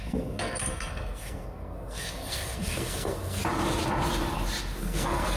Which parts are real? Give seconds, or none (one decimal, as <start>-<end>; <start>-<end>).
3.4-4.8